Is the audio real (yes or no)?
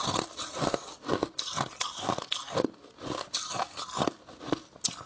yes